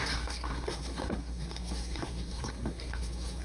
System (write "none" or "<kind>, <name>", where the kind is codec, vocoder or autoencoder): codec, SNAC